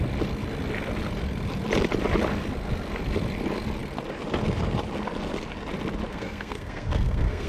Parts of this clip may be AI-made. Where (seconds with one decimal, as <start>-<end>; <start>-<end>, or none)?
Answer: 6.1-7.5